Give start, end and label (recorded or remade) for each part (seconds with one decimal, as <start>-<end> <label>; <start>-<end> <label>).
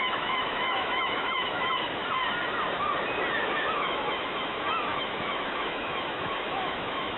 0.0-2.0 remade; 2.0-3.5 recorded; 3.5-7.2 remade